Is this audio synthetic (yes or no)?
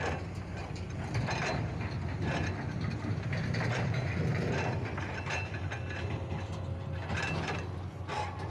no